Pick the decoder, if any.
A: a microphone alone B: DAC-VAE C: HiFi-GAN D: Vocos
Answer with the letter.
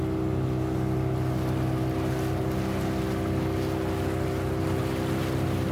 A